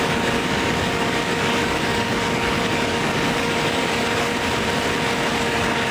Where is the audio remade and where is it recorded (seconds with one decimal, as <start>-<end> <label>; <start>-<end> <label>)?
0.0-4.3 remade; 4.3-5.3 recorded; 5.3-5.9 remade